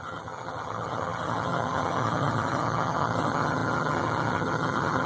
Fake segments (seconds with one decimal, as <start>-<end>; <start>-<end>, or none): 0.0-5.1